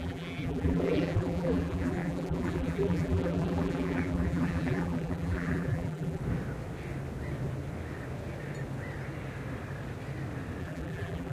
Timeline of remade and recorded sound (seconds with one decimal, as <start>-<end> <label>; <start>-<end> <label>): 0.0-6.2 remade; 6.2-10.6 recorded; 10.6-11.3 remade